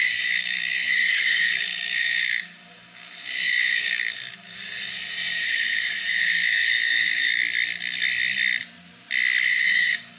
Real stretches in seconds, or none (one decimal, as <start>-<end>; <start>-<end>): 7.4-9.5

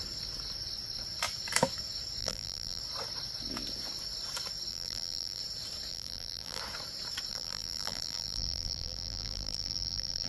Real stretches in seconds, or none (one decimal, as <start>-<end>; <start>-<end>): 0.0-2.2; 2.8-4.7; 5.4-5.9; 6.6-7.3

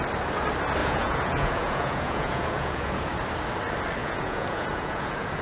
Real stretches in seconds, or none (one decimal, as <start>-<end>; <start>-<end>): 0.0-0.8; 3.1-4.0